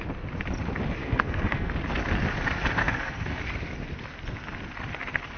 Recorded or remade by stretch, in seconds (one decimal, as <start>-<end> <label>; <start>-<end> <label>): 0.0-1.0 recorded; 1.0-1.7 remade; 1.7-2.8 recorded; 2.8-3.4 remade; 3.4-5.4 recorded